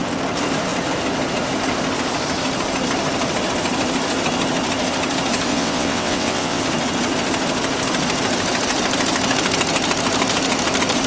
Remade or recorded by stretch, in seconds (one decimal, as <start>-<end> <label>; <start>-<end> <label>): 0.0-5.5 recorded; 5.5-6.6 remade; 6.6-11.1 recorded